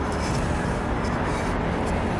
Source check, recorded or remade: recorded